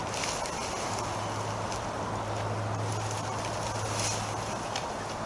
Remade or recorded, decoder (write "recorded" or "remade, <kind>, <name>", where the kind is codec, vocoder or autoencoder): recorded